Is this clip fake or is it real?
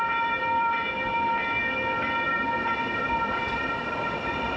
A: fake